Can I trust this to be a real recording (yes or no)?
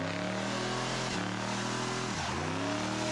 yes